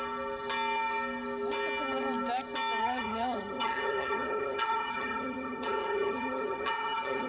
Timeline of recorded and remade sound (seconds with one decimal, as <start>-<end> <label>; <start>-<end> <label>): 0.0-2.8 recorded; 2.8-7.3 remade

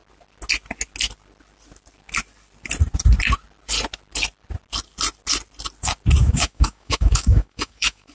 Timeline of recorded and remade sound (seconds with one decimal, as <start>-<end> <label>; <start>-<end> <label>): 0.0-6.2 recorded; 6.2-8.1 remade